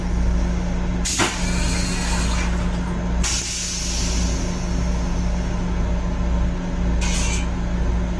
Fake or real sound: real